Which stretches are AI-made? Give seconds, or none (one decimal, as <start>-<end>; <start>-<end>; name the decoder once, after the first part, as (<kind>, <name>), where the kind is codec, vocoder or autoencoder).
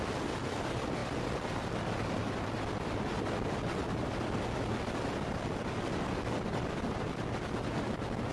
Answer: none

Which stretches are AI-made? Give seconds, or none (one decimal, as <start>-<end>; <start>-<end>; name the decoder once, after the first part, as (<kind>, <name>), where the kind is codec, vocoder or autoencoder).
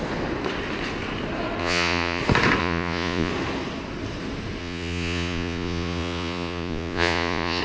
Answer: 1.6-2.2 (vocoder, Vocos); 2.6-3.3; 4.6-7.6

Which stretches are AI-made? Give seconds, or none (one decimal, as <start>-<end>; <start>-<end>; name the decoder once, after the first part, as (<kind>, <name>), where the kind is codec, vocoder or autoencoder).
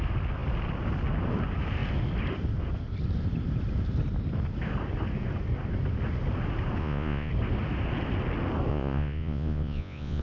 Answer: 6.8-7.3 (vocoder, Vocos); 8.7-10.2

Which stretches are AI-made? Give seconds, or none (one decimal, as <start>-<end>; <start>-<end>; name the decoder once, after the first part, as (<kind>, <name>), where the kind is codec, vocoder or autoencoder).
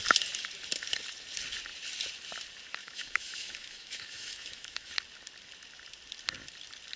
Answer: 2.8-4.9 (autoencoder, DAC-VAE)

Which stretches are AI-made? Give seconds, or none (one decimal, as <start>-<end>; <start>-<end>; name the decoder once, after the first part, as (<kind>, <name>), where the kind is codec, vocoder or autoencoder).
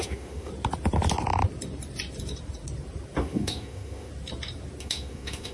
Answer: 0.0-0.5 (autoencoder, DAC-VAE); 3.2-4.1; 4.8-5.5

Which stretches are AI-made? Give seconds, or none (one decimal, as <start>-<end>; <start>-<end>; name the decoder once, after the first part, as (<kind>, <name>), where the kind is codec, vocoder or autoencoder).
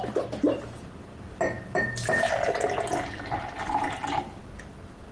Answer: none